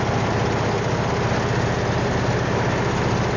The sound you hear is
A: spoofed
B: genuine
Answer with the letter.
B